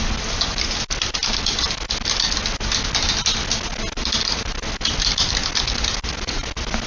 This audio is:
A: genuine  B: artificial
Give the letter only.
A